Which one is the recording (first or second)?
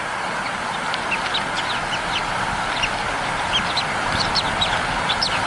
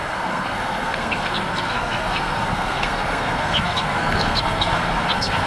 first